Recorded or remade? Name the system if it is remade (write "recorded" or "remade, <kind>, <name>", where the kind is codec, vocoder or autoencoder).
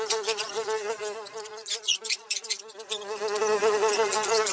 remade, vocoder, Vocos